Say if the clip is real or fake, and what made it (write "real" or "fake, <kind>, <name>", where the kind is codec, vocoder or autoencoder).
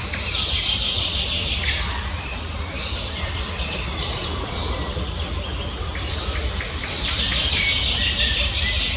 real